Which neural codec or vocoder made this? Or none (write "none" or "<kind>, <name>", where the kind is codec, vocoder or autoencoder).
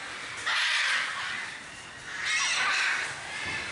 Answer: none